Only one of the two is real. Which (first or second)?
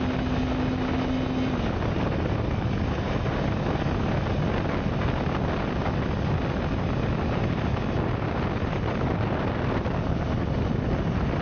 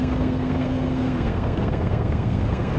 first